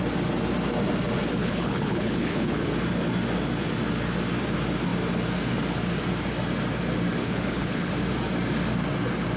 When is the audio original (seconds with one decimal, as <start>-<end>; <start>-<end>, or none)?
0.0-1.4; 2.7-7.2; 7.9-9.4